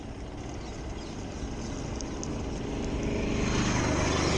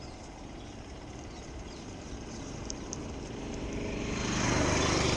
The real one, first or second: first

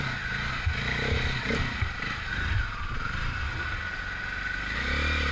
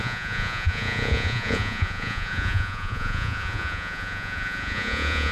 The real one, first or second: first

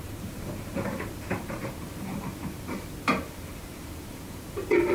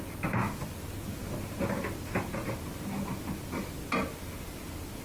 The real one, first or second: second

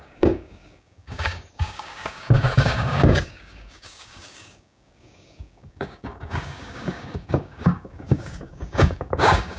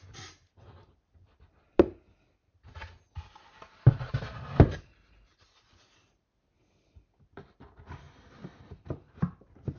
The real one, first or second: second